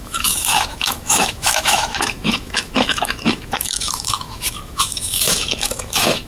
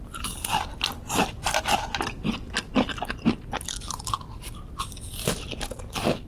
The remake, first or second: first